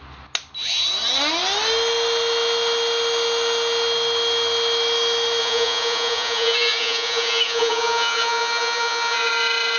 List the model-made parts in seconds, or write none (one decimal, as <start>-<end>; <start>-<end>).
5.4-9.3